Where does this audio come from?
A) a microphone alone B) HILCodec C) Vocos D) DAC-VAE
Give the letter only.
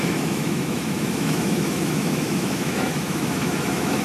D